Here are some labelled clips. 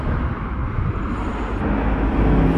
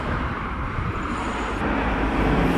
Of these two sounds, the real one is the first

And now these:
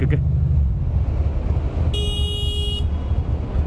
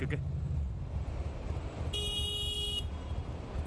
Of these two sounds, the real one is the first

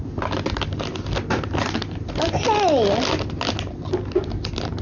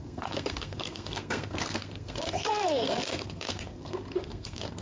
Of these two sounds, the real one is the first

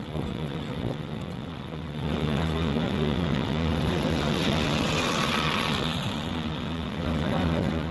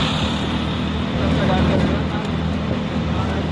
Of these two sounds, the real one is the second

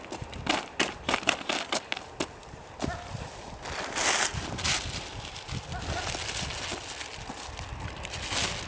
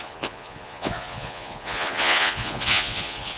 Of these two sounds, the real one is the first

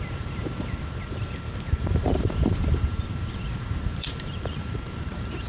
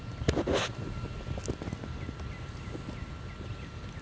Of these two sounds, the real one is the second